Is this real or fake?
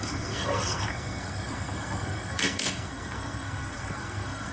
fake